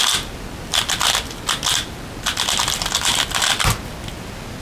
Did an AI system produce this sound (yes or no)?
no